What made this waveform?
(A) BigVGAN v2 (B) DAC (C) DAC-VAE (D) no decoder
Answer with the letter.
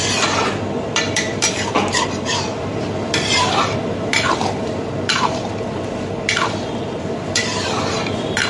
A